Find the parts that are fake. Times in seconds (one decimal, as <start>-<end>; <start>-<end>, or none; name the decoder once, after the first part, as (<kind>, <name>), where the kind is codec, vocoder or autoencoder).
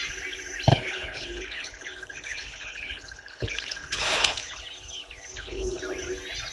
0.7-4.6 (codec, HILCodec); 5.3-5.8